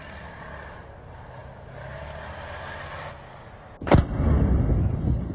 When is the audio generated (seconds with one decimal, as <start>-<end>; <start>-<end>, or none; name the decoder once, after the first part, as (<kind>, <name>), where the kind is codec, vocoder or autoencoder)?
none